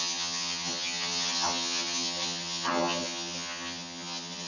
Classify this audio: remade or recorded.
remade